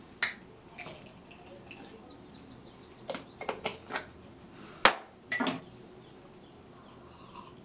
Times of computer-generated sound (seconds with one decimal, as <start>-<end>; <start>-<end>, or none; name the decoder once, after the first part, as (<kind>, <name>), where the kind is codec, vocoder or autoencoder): none